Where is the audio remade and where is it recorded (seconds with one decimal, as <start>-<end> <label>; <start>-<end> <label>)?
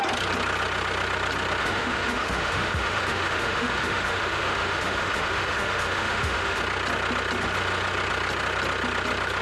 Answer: 0.0-1.6 recorded; 1.6-6.6 remade; 6.6-9.4 recorded